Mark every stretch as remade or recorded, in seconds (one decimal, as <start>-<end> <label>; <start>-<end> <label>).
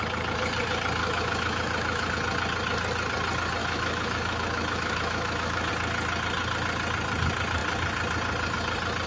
0.0-1.0 recorded; 1.0-2.1 remade; 2.1-3.6 recorded; 3.6-5.7 remade; 5.7-9.1 recorded